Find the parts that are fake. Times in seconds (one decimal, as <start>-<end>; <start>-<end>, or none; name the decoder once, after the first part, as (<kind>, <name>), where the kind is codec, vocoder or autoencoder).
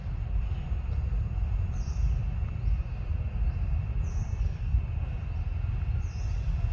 4.1-4.8 (codec, SNAC)